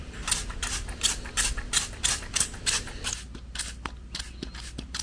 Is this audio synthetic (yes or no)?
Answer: no